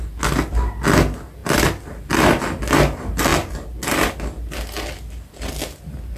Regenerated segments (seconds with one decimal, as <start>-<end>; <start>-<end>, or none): none